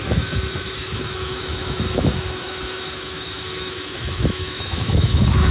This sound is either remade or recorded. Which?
remade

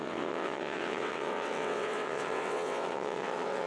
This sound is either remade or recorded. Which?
remade